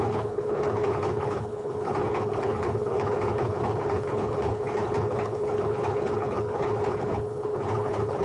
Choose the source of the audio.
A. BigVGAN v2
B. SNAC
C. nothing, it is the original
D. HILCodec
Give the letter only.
D